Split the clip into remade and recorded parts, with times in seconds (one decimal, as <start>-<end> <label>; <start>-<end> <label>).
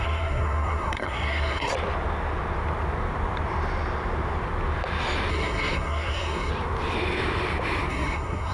0.0-1.7 remade; 1.7-5.3 recorded; 5.3-6.5 remade; 6.5-7.9 recorded; 7.9-8.5 remade